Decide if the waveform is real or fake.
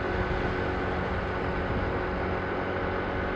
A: real